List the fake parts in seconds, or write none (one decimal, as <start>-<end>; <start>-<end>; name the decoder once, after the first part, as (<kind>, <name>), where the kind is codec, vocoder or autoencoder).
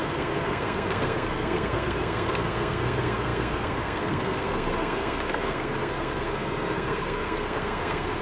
0.0-8.2 (codec, SNAC)